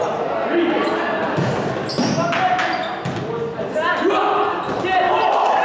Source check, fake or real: real